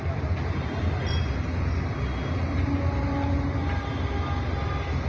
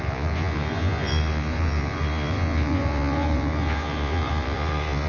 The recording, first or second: first